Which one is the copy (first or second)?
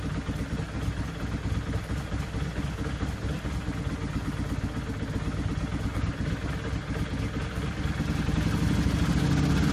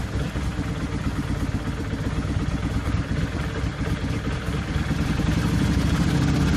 second